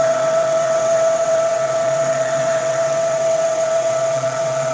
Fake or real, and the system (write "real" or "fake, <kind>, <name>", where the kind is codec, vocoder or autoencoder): fake, vocoder, WaveNeXt